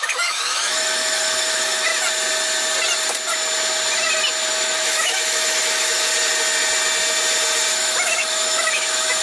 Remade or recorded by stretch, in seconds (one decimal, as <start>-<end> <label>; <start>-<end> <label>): 0.0-1.9 remade; 1.9-4.5 recorded; 4.5-6.1 remade; 6.1-7.7 recorded; 7.7-9.2 remade